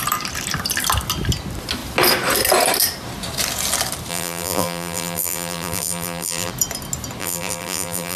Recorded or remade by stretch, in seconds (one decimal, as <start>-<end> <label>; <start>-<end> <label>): 0.0-4.1 recorded; 4.1-6.5 remade; 6.5-7.2 recorded; 7.2-8.2 remade